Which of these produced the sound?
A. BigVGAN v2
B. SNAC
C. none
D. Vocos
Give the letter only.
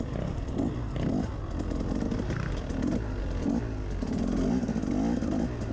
C